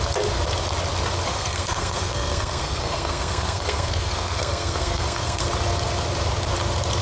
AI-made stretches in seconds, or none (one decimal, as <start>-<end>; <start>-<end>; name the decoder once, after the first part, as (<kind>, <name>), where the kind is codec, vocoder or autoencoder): 1.3-5.5 (codec, SNAC)